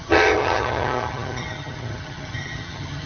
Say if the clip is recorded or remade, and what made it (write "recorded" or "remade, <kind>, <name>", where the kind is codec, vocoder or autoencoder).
remade, vocoder, HiFi-GAN